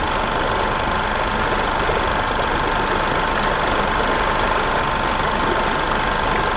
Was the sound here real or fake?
real